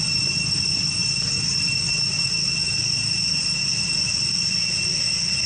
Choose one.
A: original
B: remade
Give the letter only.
A